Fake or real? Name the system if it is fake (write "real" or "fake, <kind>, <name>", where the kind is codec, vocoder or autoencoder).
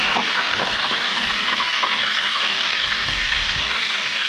fake, codec, DAC